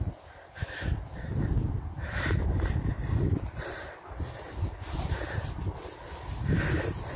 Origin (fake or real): real